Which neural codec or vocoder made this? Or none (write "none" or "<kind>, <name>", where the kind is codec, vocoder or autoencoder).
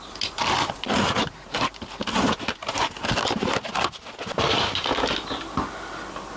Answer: none